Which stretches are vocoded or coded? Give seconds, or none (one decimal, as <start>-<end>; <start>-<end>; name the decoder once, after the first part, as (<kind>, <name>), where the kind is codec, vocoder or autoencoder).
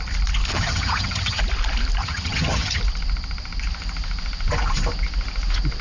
0.5-1.4 (vocoder, HiFi-GAN); 2.0-2.8